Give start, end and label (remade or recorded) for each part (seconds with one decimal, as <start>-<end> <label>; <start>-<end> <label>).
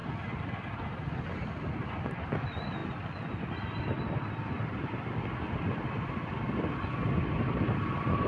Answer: 0.0-8.3 recorded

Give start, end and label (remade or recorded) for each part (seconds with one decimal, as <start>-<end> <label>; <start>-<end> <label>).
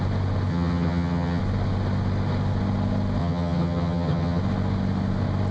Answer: 0.0-0.5 recorded; 0.5-1.4 remade; 1.4-3.2 recorded; 3.2-4.4 remade; 4.4-5.5 recorded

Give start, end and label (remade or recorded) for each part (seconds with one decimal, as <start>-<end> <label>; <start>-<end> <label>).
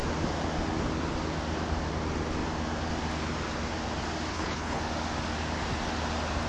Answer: 0.0-4.3 recorded; 4.3-4.8 remade; 4.8-6.5 recorded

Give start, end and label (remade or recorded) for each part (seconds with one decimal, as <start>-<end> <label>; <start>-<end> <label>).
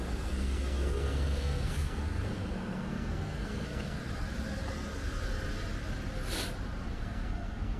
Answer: 0.0-4.0 remade; 4.0-6.9 recorded; 6.9-7.8 remade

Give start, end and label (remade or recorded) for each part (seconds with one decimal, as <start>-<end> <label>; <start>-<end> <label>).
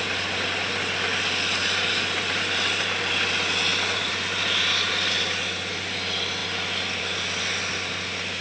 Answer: 0.0-1.6 recorded; 1.6-3.0 remade; 3.0-3.7 recorded; 3.7-4.9 remade; 4.9-8.4 recorded